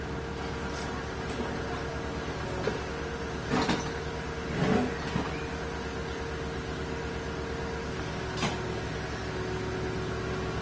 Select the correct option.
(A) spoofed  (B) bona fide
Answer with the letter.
B